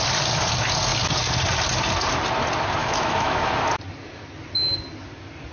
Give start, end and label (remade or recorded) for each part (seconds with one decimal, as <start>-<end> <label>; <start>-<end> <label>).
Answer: 0.0-2.8 recorded; 2.8-3.5 remade; 3.5-5.5 recorded

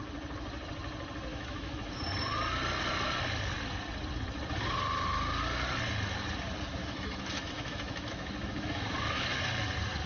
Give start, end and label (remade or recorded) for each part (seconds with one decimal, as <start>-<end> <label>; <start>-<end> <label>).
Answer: 0.0-1.3 recorded; 1.3-2.0 remade; 2.0-6.8 recorded; 6.8-9.4 remade; 9.4-10.1 recorded

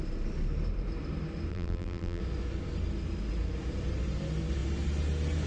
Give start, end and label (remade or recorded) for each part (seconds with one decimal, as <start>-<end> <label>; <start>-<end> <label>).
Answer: 0.0-1.5 recorded; 1.5-2.2 remade; 2.2-5.5 recorded

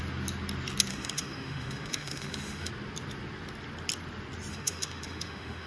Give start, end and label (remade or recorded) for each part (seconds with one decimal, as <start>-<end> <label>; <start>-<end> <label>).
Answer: 0.0-0.9 recorded; 0.9-2.7 remade; 2.7-4.5 recorded; 4.5-5.7 remade

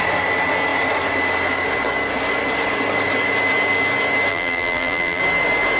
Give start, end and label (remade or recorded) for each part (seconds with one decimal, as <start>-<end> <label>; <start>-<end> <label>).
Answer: 0.0-4.3 recorded; 4.3-5.2 remade; 5.2-5.8 recorded